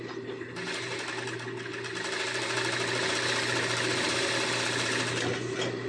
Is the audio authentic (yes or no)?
yes